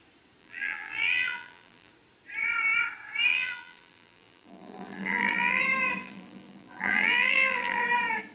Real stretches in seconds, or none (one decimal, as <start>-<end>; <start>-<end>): 0.0-0.4; 1.9-3.3; 5.6-6.0; 7.8-8.3

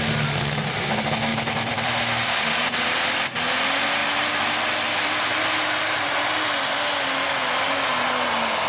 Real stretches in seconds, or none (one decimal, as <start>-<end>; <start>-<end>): 0.0-1.3; 2.8-4.0; 5.4-8.7